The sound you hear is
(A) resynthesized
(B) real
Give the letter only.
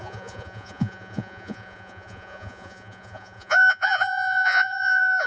A